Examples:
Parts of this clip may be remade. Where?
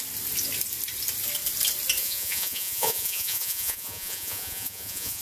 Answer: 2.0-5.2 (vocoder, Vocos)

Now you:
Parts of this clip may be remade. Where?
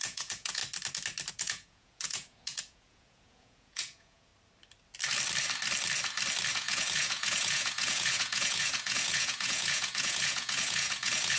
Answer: 0.0-0.6 (vocoder, Vocos); 1.3-4.3; 6.5-11.4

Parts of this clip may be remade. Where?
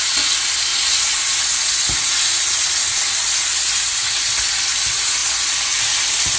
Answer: 0.7-1.3 (vocoder, Vocos); 2.8-3.3